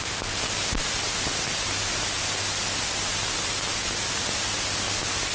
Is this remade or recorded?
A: recorded